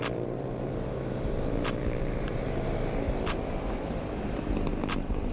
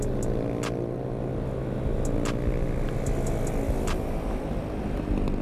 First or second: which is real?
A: second